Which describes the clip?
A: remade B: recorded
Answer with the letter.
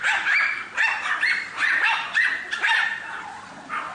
B